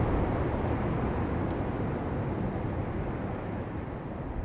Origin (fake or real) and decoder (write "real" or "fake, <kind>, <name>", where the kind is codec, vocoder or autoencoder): real